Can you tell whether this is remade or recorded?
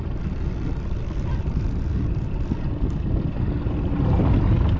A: recorded